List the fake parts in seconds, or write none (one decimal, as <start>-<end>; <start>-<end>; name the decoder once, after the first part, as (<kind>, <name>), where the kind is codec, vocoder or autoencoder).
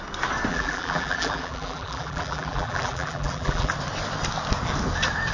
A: 0.5-3.7 (vocoder, BigVGAN v2)